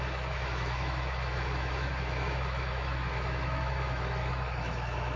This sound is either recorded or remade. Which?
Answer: remade